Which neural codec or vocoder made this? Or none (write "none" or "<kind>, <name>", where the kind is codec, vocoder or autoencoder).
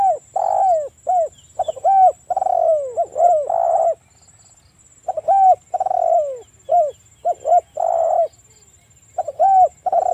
none